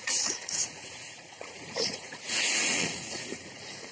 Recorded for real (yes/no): no